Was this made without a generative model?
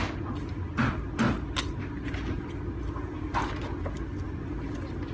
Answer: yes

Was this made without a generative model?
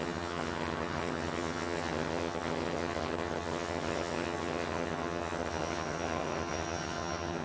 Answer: no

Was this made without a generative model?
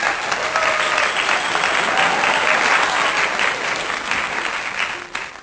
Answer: yes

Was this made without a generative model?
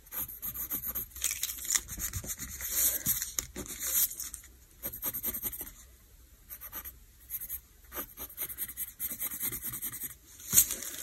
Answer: yes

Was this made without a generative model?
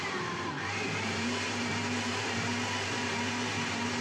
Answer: no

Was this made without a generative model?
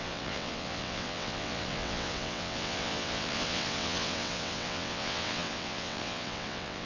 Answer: no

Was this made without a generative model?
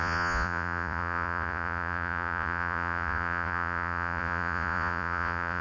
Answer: no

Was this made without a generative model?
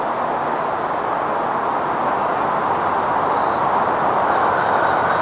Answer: yes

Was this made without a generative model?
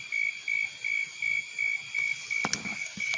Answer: yes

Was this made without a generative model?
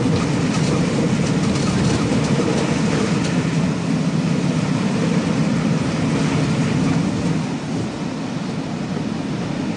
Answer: yes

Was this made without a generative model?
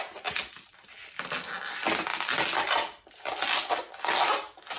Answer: yes